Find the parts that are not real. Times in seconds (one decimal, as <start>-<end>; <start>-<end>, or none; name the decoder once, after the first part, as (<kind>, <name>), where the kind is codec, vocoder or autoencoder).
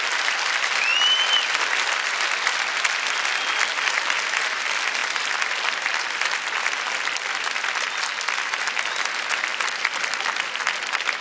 none